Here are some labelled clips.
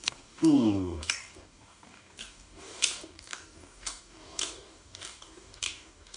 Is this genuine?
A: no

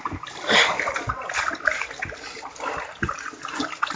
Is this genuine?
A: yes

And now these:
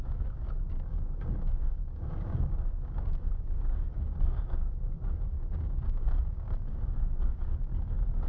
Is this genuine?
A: no